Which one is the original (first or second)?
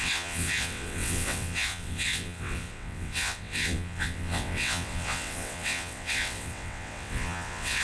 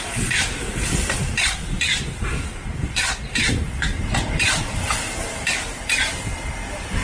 second